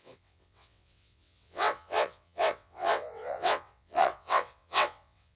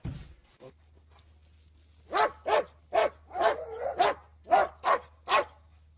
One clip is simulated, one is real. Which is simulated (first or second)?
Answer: first